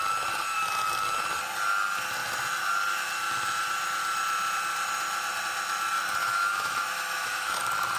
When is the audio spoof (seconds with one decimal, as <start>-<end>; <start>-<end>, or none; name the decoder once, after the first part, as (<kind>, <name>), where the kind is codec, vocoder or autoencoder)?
6.2-7.6 (autoencoder, DAC-VAE)